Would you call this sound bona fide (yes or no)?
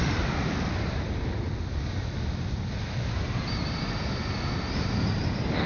yes